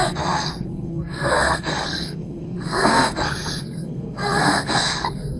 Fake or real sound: fake